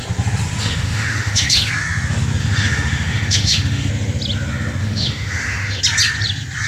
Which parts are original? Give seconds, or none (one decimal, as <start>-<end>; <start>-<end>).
0.0-0.6; 1.7-2.4; 3.9-4.8; 5.8-6.7